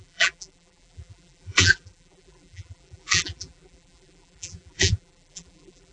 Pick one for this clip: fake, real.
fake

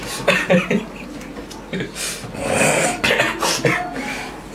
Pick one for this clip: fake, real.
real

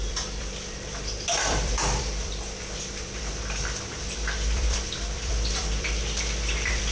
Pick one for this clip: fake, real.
fake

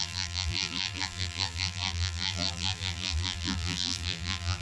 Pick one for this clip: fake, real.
fake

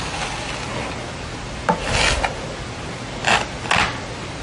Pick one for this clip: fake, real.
real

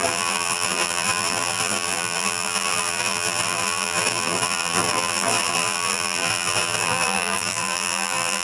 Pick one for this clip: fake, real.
fake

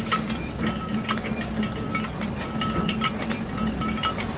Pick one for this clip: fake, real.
fake